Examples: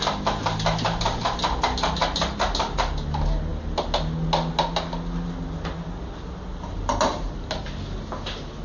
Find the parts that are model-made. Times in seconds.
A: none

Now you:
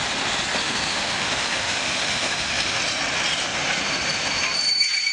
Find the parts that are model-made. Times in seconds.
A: 0.6-2.8 (autoencoder, DAC-VAE)

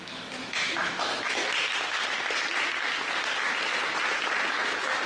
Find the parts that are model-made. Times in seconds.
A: 0.0-1.4 (autoencoder, DAC-VAE); 4.5-5.1